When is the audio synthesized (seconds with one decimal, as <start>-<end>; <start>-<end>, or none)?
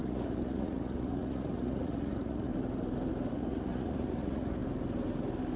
0.0-2.5; 3.3-4.6